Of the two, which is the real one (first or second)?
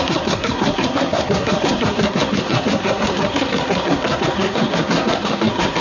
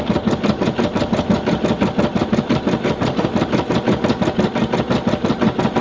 second